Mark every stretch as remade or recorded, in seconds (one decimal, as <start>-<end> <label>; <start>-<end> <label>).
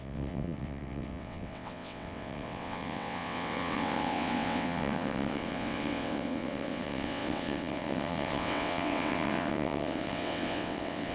0.0-11.1 remade